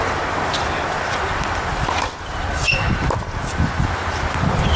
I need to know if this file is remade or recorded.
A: remade